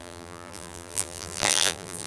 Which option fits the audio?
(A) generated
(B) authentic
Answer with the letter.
A